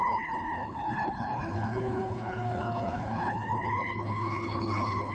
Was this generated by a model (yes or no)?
yes